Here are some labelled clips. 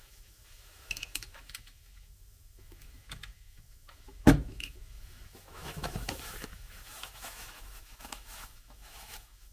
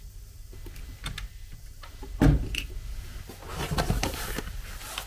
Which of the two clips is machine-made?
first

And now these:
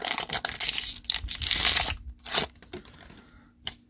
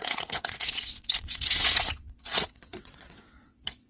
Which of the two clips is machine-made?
second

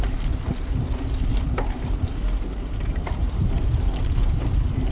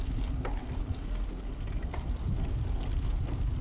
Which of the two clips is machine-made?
first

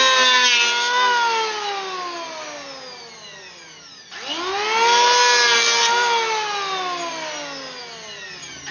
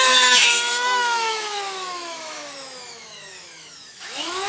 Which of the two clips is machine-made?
second